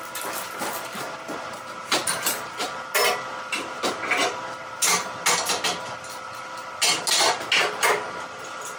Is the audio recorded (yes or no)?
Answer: yes